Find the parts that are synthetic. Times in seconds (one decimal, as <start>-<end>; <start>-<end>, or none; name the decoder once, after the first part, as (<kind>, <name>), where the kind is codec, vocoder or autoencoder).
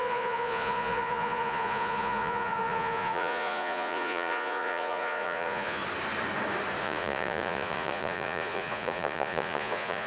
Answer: 0.0-5.8 (vocoder, Vocos); 6.8-10.1